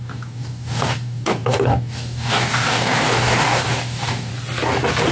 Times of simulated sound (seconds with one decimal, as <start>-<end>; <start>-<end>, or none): 0.0-4.3